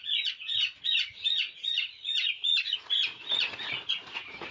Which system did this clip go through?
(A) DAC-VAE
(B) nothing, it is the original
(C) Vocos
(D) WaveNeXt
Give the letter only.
C